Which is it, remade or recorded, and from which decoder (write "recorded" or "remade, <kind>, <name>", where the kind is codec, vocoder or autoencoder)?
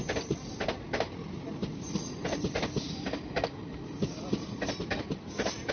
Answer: recorded